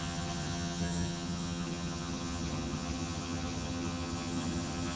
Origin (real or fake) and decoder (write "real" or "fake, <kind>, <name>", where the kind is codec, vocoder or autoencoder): fake, vocoder, HiFi-GAN